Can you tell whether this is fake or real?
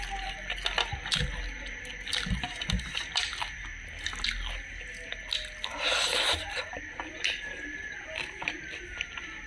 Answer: real